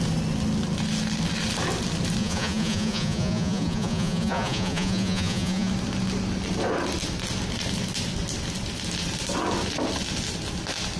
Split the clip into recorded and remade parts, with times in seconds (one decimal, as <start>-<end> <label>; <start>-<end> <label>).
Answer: 0.0-2.2 recorded; 2.2-5.7 remade; 5.7-11.0 recorded